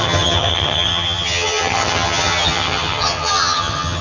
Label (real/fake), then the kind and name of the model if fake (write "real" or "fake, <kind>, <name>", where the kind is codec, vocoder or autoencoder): fake, vocoder, HiFi-GAN